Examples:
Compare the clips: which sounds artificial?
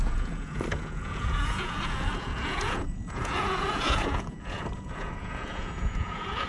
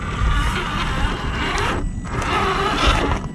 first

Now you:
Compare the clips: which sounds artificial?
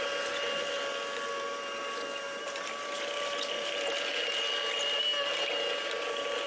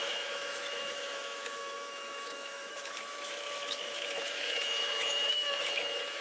second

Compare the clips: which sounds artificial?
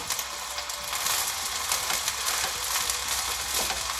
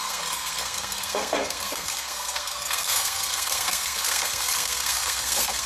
second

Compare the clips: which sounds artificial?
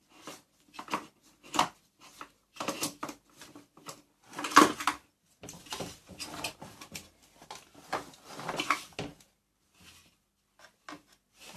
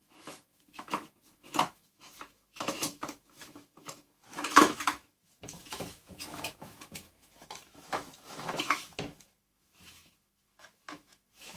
second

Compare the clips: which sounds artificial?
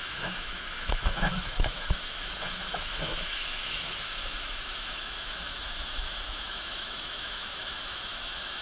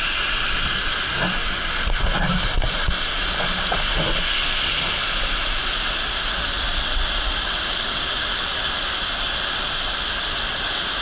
first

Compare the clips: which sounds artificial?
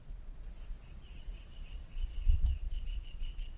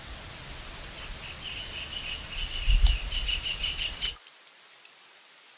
first